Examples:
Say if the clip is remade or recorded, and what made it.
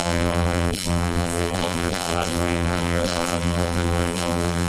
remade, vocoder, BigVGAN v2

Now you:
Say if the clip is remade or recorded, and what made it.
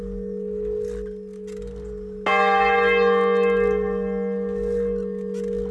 recorded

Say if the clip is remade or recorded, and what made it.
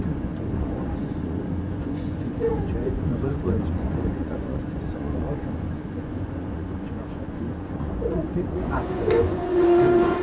remade, vocoder, Vocos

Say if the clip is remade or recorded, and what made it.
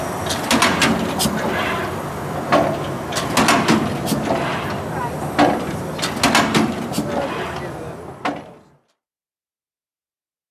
recorded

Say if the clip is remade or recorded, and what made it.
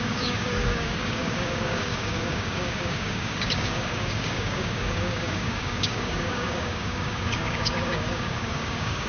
remade, codec, DAC